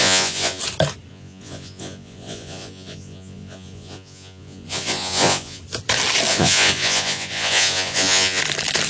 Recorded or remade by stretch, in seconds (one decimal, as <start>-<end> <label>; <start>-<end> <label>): 0.0-0.6 remade; 0.6-1.1 recorded; 1.1-5.6 remade; 5.6-6.3 recorded; 6.3-8.4 remade; 8.4-8.9 recorded

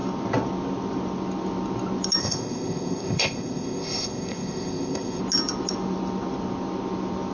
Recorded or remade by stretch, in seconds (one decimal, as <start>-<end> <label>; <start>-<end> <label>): 0.0-2.2 recorded; 2.2-5.2 remade; 5.2-7.3 recorded

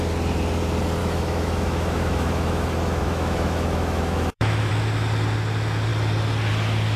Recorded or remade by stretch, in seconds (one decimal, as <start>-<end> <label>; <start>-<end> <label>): 0.0-1.0 recorded; 1.0-4.7 remade; 4.7-7.0 recorded

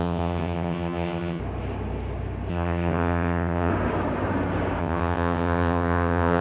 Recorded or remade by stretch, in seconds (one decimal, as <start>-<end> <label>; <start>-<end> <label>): 0.0-1.4 remade; 1.4-2.5 recorded; 2.5-3.7 remade; 3.7-4.8 recorded; 4.8-6.4 remade

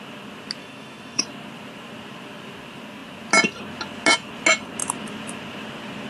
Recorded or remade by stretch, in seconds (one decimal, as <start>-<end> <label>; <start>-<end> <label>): 0.0-0.6 recorded; 0.6-1.2 remade; 1.2-6.1 recorded

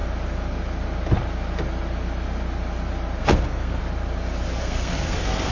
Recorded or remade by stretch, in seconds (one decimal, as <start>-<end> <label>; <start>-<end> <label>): 0.0-3.2 recorded; 3.2-3.8 remade; 3.8-4.6 recorded; 4.6-5.5 remade

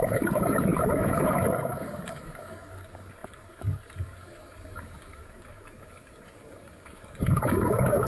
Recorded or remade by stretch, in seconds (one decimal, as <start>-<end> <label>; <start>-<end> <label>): 0.0-8.1 remade